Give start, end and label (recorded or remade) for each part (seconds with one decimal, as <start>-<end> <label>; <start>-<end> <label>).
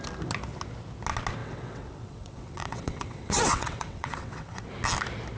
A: 0.0-1.4 recorded; 1.4-4.6 remade; 4.6-5.4 recorded